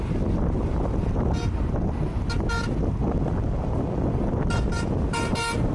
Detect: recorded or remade recorded